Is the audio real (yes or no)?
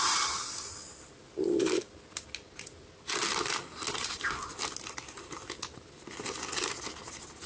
yes